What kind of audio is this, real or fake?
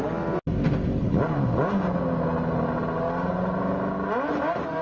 real